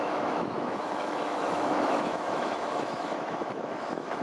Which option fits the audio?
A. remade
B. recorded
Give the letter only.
A